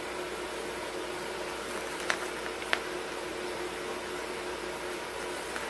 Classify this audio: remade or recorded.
recorded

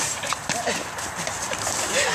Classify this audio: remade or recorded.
recorded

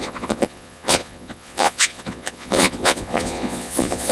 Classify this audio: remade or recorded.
remade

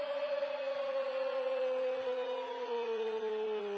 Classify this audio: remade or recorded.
remade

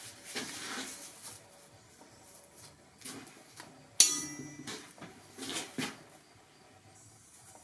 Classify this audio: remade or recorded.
recorded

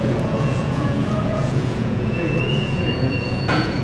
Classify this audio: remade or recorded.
remade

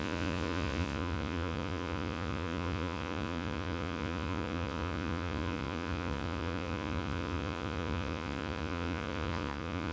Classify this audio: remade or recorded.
remade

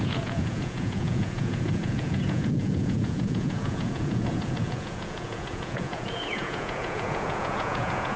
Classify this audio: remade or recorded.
remade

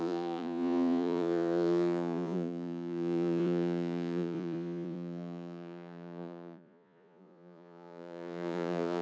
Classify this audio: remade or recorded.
remade